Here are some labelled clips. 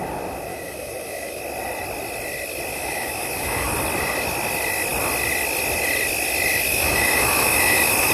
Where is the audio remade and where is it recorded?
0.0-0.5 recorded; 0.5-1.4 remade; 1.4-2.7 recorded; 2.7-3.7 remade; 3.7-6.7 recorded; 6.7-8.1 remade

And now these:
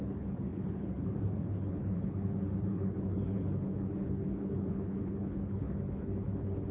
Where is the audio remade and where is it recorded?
0.0-6.7 remade

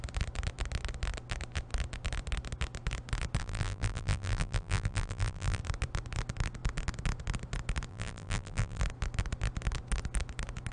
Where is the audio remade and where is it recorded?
0.0-3.4 recorded; 3.4-5.6 remade; 5.6-7.9 recorded; 7.9-8.8 remade; 8.8-10.7 recorded

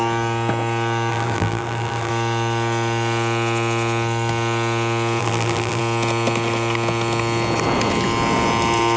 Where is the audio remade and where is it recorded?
0.0-1.1 recorded; 1.1-2.1 remade; 2.1-5.2 recorded; 5.2-5.8 remade; 5.8-9.0 recorded